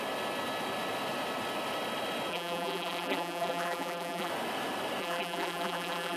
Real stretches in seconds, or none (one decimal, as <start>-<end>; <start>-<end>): 0.0-2.3; 4.3-5.0